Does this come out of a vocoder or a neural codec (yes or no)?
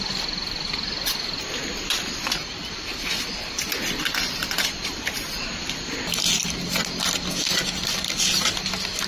no